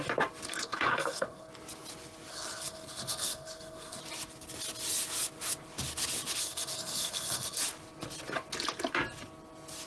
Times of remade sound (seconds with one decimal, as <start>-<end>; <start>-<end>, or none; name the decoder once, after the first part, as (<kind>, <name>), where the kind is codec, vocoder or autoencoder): 0.5-1.5 (codec, SNAC); 2.3-4.0; 6.4-7.6